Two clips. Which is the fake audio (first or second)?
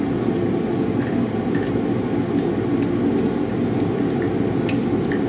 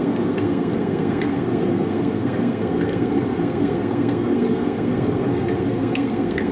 second